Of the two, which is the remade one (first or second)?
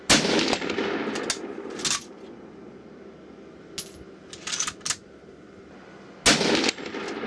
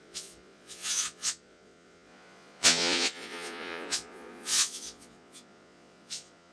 second